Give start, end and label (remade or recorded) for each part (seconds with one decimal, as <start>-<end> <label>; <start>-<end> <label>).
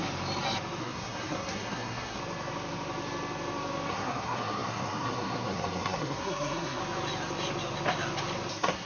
0.0-0.8 recorded; 0.8-2.2 remade; 2.2-3.9 recorded; 3.9-6.8 remade; 6.8-8.5 recorded; 8.5-8.9 remade